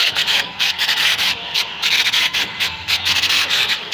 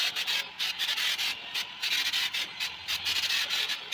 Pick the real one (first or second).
second